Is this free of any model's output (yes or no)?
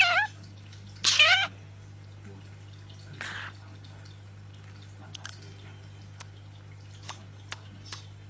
yes